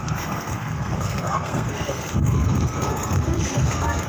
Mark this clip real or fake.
fake